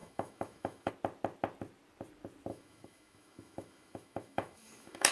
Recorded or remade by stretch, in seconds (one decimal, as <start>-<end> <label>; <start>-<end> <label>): 0.0-0.9 remade; 0.9-2.5 recorded; 2.5-5.1 remade